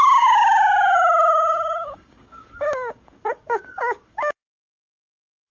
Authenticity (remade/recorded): remade